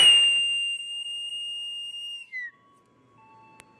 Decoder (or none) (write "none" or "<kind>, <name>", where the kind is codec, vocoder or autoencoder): none